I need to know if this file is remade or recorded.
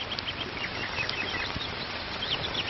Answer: remade